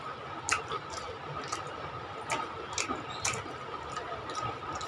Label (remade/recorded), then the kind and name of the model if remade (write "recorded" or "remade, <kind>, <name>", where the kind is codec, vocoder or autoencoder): recorded